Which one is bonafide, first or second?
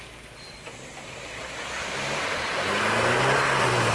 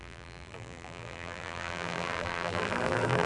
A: first